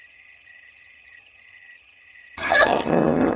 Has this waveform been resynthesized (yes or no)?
yes